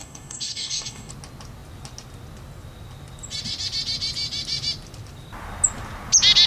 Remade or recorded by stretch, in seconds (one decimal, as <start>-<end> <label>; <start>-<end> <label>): 0.0-1.1 remade; 1.1-6.5 recorded